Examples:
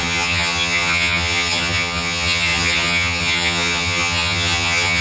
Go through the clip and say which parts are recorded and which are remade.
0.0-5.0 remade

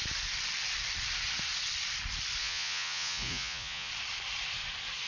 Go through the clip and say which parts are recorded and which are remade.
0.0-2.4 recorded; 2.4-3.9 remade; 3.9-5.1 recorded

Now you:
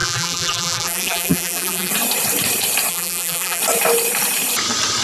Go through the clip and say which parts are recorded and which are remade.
0.0-1.9 remade; 1.9-2.9 recorded; 2.9-3.6 remade; 3.6-5.0 recorded

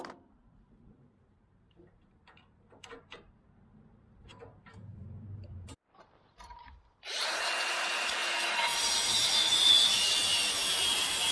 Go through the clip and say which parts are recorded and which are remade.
0.0-4.9 remade; 4.9-6.0 recorded; 6.0-11.3 remade

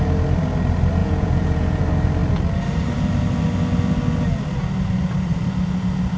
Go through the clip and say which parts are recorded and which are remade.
0.0-1.0 recorded; 1.0-1.8 remade; 1.8-6.2 recorded

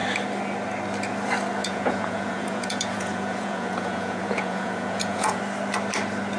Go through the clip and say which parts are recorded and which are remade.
0.0-1.6 recorded; 1.6-5.4 remade; 5.4-6.4 recorded

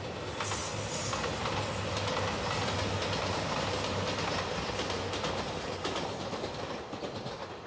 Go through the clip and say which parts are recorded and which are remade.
0.0-7.7 recorded

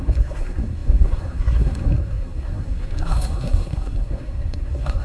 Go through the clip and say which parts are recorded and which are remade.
0.0-5.0 remade